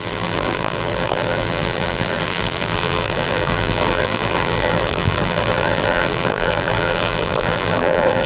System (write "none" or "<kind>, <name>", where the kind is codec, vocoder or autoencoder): vocoder, BigVGAN v2